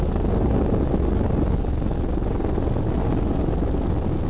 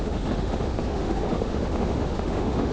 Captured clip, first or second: first